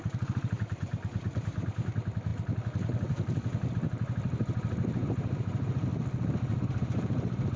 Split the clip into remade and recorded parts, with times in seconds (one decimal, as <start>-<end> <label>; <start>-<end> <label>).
0.0-2.3 remade; 2.3-3.7 recorded; 3.7-5.9 remade; 5.9-6.6 recorded; 6.6-7.6 remade